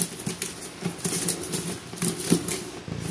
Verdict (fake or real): real